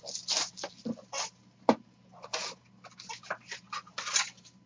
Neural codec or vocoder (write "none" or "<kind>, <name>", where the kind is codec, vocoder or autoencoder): none